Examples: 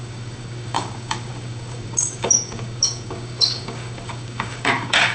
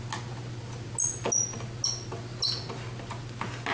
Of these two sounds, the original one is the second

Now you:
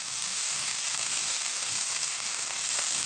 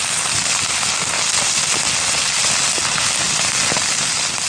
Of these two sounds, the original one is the second